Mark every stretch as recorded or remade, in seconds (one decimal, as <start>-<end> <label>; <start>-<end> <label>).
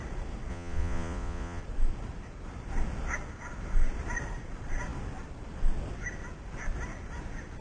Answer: 0.0-0.5 recorded; 0.5-1.6 remade; 1.6-7.6 recorded